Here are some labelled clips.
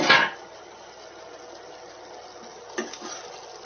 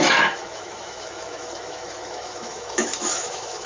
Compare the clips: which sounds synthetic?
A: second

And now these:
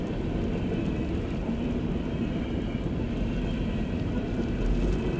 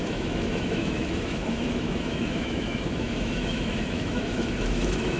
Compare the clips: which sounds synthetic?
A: second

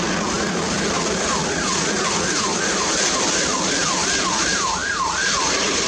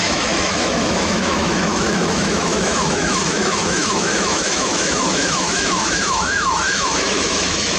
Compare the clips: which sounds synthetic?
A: second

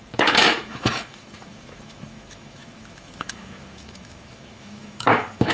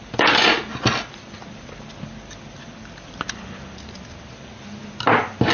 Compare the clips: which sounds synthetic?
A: first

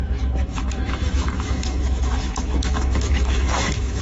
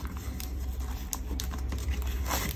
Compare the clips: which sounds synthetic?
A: first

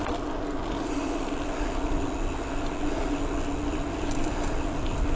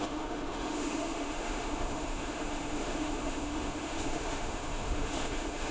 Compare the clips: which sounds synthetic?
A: second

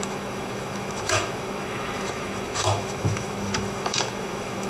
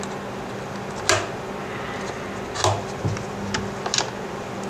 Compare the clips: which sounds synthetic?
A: first